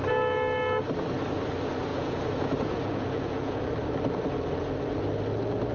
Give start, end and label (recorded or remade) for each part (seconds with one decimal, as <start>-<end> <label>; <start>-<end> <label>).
0.0-1.9 recorded; 1.9-3.6 remade; 3.6-5.7 recorded